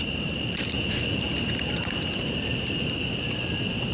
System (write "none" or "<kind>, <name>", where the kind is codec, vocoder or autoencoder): vocoder, BigVGAN v2